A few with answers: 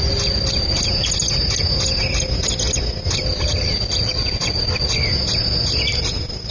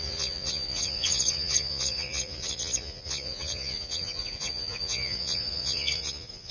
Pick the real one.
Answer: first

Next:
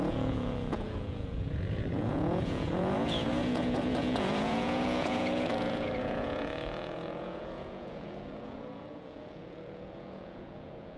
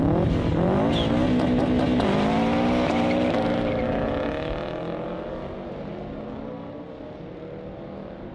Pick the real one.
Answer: second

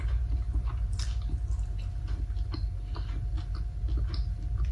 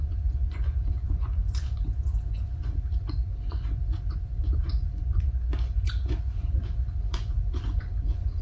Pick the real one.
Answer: first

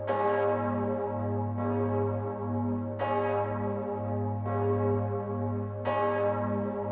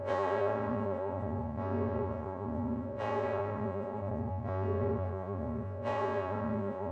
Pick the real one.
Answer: first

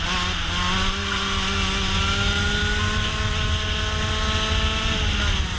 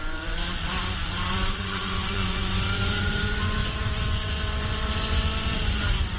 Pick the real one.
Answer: first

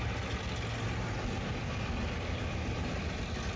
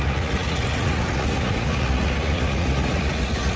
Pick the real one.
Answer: first